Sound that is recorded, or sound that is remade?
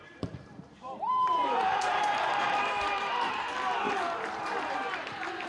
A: remade